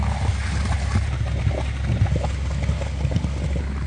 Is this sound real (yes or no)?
yes